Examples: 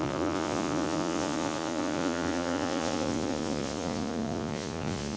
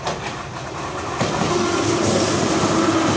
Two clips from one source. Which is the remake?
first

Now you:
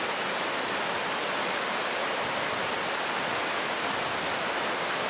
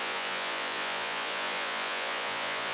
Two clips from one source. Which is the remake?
second